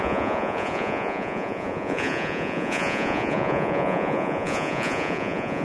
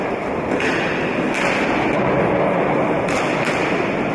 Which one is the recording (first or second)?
second